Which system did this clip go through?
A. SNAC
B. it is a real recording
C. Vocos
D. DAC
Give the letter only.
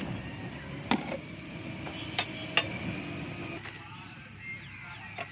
B